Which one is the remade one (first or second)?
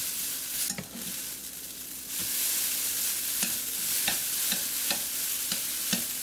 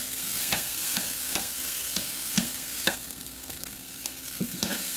second